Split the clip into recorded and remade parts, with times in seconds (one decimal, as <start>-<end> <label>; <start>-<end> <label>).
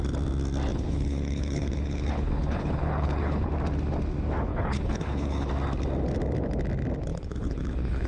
0.0-0.7 recorded; 0.7-3.5 remade; 3.5-4.5 recorded; 4.5-5.5 remade; 5.5-7.1 recorded; 7.1-8.1 remade